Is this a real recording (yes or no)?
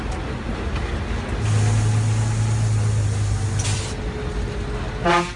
yes